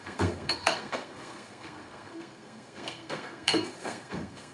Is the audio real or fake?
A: fake